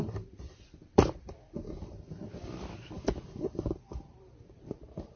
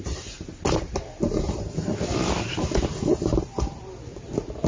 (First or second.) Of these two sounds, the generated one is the first